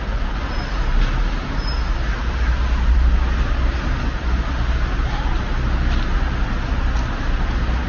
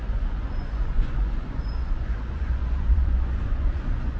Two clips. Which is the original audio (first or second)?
first